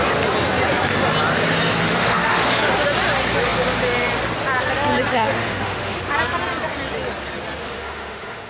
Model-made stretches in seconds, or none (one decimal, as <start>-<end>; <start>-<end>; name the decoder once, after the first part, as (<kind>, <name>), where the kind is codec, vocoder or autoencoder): 1.8-2.7 (autoencoder, DAC-VAE); 5.1-6.0; 7.6-8.5